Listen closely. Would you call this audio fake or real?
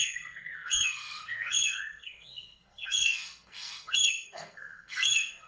fake